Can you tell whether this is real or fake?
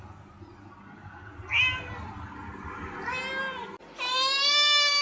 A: real